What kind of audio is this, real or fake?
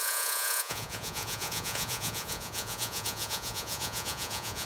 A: fake